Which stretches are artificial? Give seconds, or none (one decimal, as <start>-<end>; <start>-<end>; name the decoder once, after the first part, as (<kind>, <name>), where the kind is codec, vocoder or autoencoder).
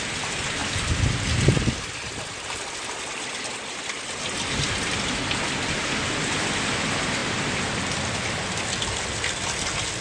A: none